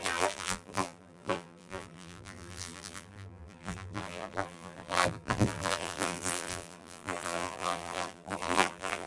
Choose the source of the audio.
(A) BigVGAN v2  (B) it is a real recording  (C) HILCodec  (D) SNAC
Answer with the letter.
A